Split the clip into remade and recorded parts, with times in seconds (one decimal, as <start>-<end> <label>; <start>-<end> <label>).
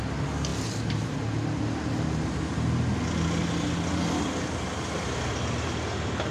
0.0-6.3 recorded